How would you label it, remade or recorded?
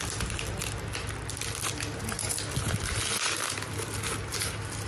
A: recorded